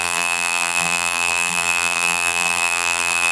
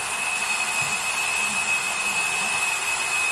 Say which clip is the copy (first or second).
first